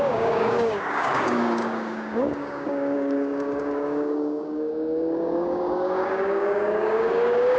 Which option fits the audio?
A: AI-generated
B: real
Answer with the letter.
A